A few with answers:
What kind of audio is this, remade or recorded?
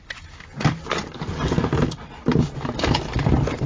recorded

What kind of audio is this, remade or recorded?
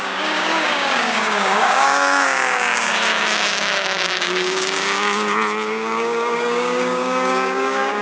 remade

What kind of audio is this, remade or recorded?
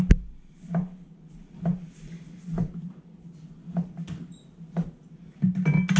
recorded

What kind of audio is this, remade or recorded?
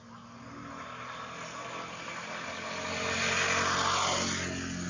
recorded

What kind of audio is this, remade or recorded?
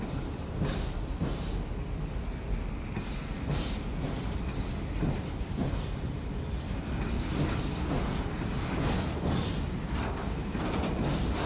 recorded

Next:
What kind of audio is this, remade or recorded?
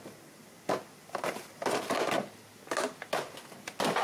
recorded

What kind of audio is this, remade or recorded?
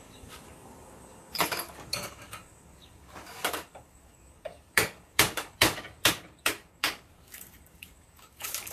remade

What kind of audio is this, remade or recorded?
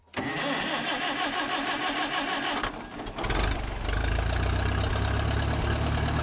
recorded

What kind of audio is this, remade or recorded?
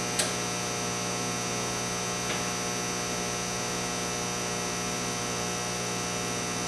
recorded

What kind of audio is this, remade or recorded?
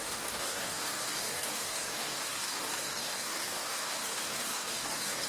remade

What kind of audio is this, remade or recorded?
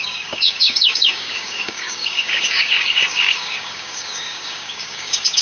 remade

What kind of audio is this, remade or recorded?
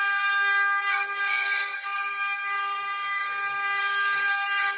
remade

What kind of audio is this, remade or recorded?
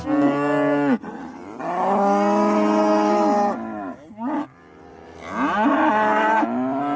recorded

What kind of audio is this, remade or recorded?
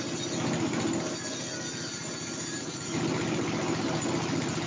recorded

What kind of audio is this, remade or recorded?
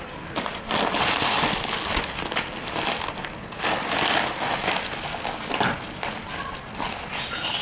recorded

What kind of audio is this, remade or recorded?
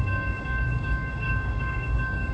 remade